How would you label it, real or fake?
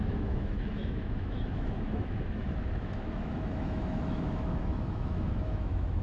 fake